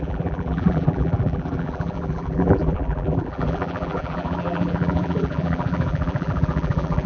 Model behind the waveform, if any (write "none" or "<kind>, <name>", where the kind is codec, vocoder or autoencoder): vocoder, BigVGAN v2